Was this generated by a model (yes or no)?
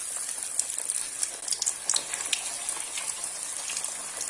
no